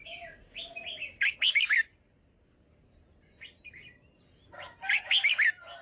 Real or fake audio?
real